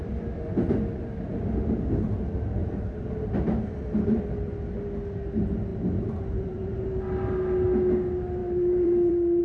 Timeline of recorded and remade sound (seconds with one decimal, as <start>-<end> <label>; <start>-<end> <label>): 0.0-2.6 recorded; 2.6-4.2 remade; 4.2-5.7 recorded; 5.7-7.0 remade; 7.0-8.4 recorded; 8.4-9.4 remade

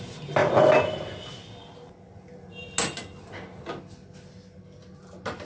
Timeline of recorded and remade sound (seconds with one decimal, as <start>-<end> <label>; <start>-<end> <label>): 0.0-5.4 recorded

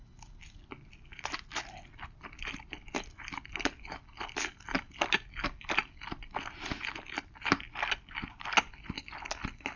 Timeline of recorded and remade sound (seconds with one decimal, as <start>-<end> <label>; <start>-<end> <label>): 0.0-9.8 recorded

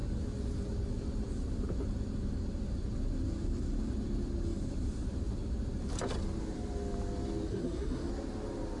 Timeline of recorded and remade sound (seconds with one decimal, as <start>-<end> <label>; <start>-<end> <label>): 0.0-7.5 recorded; 7.5-8.1 remade; 8.1-8.8 recorded

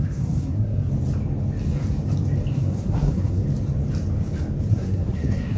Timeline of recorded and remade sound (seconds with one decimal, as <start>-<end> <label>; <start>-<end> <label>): 0.0-0.9 remade; 0.9-2.5 recorded; 2.5-3.4 remade; 3.4-4.7 recorded; 4.7-5.6 remade

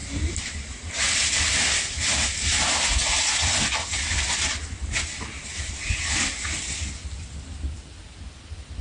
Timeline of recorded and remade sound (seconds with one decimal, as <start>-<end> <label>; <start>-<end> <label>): 0.0-8.8 recorded

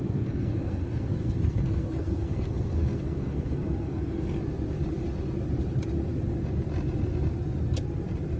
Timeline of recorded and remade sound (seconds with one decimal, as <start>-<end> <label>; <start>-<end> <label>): 0.0-4.4 remade; 4.4-8.4 recorded

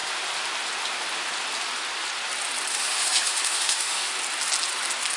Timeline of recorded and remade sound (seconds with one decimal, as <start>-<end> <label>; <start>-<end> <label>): 0.0-2.7 recorded; 2.7-4.1 remade; 4.1-5.2 recorded